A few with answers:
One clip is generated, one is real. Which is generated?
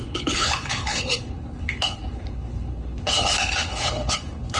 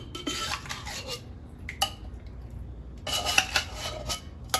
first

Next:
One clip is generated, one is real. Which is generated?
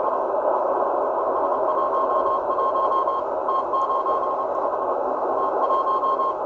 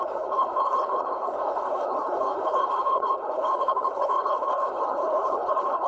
second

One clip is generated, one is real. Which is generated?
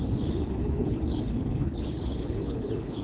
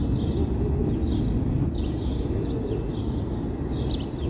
first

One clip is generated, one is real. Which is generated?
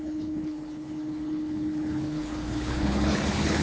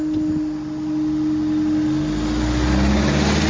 first